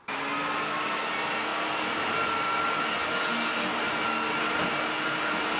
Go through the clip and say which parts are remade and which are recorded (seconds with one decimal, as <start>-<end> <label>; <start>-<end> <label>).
0.0-1.5 recorded; 1.5-2.6 remade; 2.6-5.6 recorded